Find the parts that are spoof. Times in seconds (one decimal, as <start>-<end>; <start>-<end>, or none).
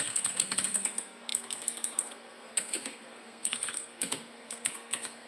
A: 0.0-5.3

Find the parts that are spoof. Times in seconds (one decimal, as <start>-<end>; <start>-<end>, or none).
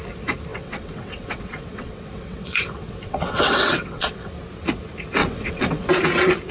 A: 0.5-4.3; 5.2-5.9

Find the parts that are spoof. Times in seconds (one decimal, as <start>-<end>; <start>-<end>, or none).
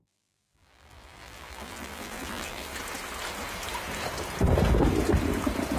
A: 0.0-2.7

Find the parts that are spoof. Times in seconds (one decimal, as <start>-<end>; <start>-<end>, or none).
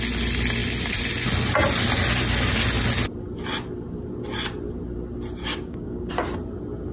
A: 5.4-6.1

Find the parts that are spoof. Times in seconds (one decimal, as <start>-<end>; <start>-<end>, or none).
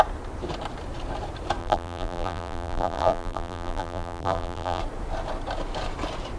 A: 1.6-4.8